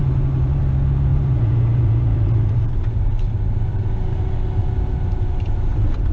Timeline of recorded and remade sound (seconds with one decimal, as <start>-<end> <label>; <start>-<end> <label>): 0.0-0.6 remade; 0.6-1.1 recorded; 1.1-2.9 remade; 2.9-4.6 recorded; 4.6-5.5 remade; 5.5-6.1 recorded